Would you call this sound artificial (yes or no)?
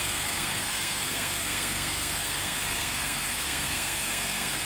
yes